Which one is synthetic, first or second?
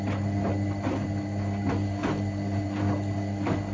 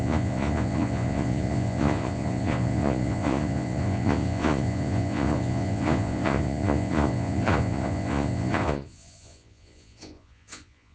second